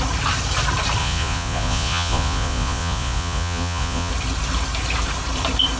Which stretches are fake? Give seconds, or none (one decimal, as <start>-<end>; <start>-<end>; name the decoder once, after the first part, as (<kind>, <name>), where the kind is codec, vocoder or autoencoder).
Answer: 1.0-4.1 (vocoder, Vocos)